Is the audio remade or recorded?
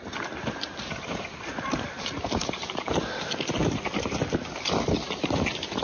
recorded